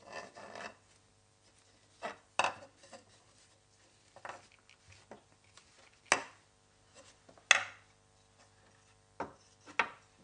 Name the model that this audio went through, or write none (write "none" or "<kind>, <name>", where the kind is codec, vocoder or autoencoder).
none